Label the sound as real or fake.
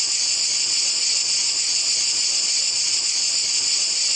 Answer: real